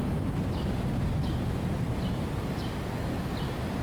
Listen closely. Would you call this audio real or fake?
real